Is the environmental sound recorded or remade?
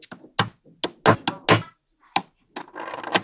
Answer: recorded